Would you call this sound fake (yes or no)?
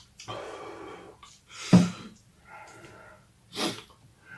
no